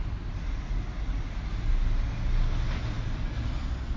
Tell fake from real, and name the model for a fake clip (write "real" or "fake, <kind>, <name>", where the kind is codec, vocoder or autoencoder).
real